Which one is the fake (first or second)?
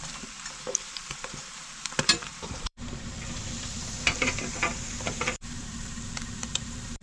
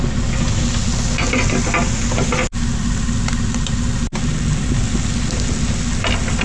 first